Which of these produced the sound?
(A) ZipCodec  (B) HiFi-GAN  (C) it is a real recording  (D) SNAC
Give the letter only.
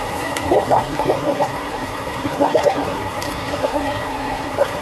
D